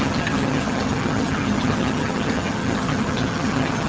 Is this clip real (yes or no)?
no